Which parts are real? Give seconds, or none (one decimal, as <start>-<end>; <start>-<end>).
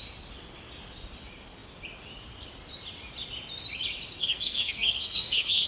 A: 0.0-4.2